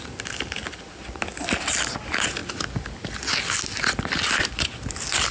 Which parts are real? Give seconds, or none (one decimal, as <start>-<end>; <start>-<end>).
0.0-5.3